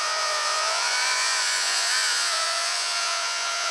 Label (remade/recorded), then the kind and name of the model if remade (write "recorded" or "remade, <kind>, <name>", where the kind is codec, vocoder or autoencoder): remade, vocoder, Vocos